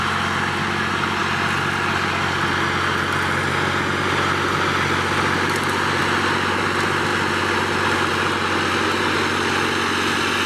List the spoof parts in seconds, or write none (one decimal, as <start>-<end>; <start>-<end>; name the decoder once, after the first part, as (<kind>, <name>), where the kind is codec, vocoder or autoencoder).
none